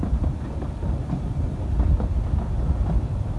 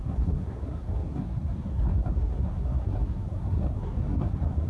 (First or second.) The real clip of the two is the first